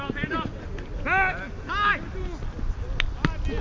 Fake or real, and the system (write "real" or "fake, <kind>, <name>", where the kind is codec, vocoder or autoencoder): real